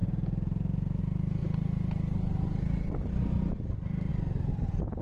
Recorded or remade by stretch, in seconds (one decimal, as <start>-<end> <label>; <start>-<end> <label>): 0.0-1.0 remade; 1.0-5.0 recorded